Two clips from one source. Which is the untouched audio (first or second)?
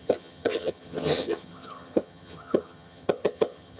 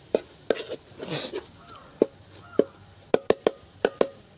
second